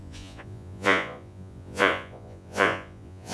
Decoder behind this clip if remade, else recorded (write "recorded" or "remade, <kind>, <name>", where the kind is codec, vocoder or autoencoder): remade, vocoder, Vocos